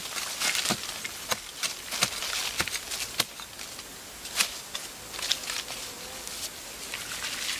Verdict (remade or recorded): recorded